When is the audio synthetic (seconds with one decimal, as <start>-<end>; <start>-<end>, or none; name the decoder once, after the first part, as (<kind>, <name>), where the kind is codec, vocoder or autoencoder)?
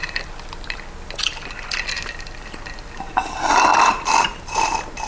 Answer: 3.7-5.1 (vocoder, BigVGAN v2)